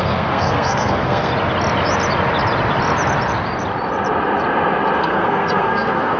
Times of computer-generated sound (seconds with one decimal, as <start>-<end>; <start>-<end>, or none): 0.0-1.3; 5.0-6.2